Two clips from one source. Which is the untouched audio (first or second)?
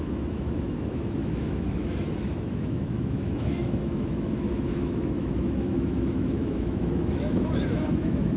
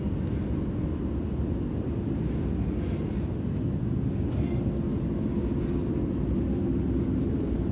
second